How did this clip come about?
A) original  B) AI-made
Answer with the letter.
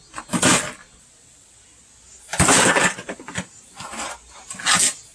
A